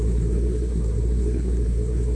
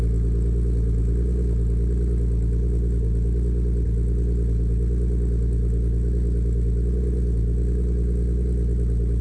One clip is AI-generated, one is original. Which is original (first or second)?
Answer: second